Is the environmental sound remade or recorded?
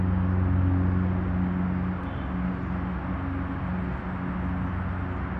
recorded